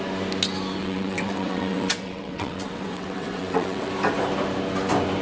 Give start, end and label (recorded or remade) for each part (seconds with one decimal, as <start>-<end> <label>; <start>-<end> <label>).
0.0-0.8 recorded; 0.8-3.9 remade; 3.9-5.2 recorded